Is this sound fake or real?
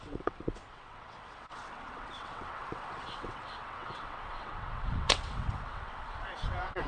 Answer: fake